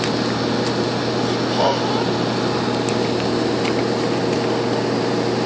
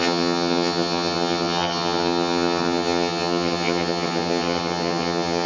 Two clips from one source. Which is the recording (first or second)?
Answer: first